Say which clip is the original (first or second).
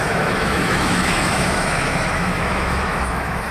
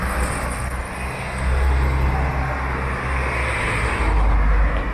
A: second